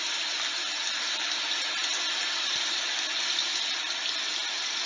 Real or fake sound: real